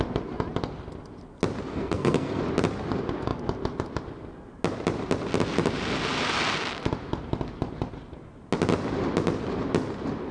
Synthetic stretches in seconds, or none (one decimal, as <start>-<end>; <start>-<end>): 1.7-2.4